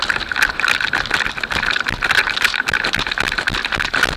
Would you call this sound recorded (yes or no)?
yes